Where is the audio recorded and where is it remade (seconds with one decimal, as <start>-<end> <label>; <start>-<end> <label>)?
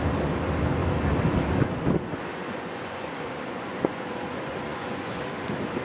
0.0-2.3 recorded; 2.3-5.2 remade; 5.2-5.8 recorded